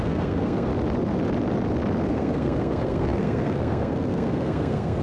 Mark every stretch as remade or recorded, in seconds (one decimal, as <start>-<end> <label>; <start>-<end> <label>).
0.0-0.7 remade; 0.7-2.1 recorded; 2.1-5.0 remade